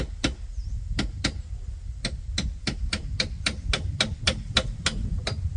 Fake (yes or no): no